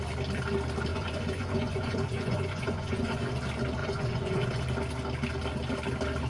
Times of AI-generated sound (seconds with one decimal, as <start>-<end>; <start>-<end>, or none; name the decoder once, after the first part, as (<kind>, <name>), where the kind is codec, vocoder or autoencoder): 0.9-3.3 (vocoder, Vocos); 3.8-4.6